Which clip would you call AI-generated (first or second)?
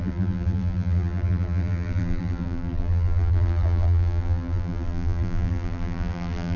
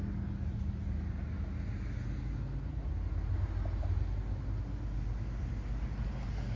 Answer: first